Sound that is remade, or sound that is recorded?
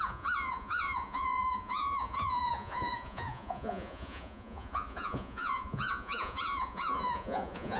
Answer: remade